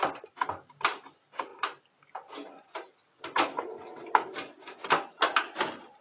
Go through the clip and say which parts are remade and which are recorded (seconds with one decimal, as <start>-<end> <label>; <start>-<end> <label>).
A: 0.0-6.0 recorded